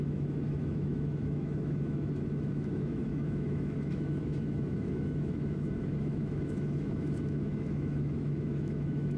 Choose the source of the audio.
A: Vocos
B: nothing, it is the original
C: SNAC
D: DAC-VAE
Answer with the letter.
D